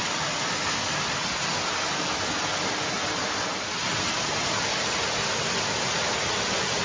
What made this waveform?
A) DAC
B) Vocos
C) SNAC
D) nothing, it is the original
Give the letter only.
D